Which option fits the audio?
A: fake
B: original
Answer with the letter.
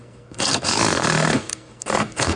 A